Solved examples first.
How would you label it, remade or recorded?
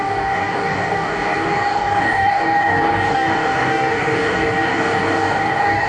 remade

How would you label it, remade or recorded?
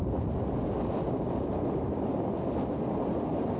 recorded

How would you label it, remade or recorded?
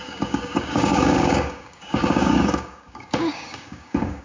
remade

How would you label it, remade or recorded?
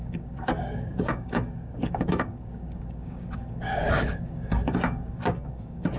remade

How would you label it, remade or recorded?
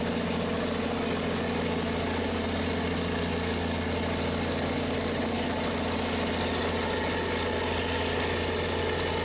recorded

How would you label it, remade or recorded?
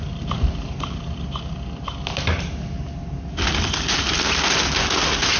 recorded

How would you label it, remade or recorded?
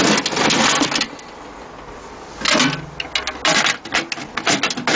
recorded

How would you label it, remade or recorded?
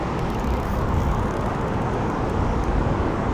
remade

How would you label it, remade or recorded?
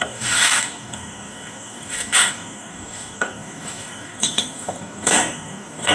remade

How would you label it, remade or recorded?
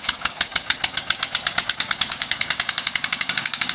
remade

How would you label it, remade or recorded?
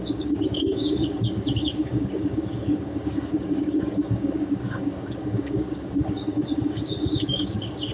remade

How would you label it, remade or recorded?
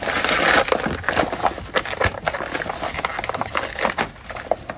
recorded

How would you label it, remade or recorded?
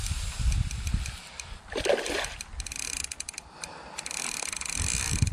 recorded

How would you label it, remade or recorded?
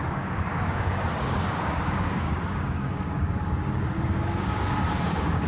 remade